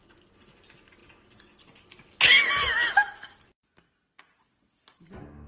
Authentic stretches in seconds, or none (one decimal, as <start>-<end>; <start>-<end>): 0.0-5.5